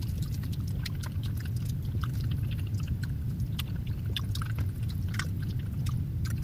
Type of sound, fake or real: fake